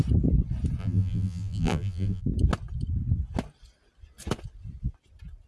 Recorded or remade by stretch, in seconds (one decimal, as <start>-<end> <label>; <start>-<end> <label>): 0.0-0.8 recorded; 0.8-2.2 remade; 2.2-5.5 recorded